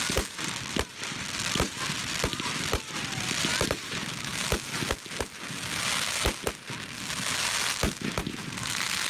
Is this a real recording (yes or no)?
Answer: yes